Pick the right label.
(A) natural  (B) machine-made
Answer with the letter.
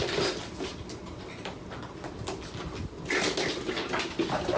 A